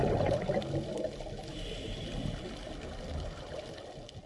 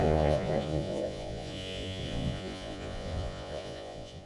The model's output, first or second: second